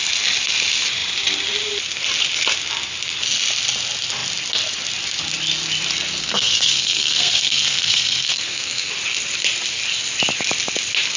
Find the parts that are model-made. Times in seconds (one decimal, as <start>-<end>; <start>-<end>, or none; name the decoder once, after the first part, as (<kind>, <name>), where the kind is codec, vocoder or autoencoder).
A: 6.2-8.9 (codec, SNAC)